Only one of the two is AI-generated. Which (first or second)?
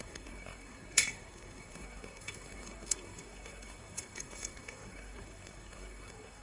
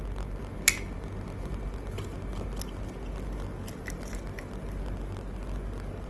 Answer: first